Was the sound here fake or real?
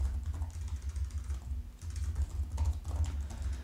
real